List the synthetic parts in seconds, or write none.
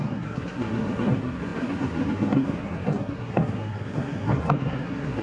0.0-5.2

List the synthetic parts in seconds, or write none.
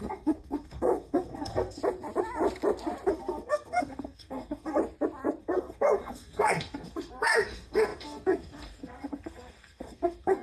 0.0-1.8; 3.1-4.8; 5.4-10.4